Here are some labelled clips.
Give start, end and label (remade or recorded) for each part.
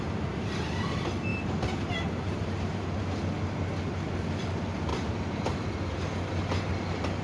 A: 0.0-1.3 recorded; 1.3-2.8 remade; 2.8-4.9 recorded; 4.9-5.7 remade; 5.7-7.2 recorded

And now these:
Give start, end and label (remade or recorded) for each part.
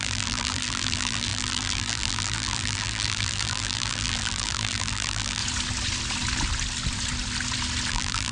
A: 0.0-5.4 remade; 5.4-7.9 recorded; 7.9-8.3 remade